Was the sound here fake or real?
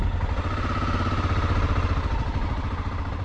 real